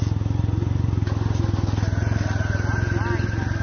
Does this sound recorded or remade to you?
recorded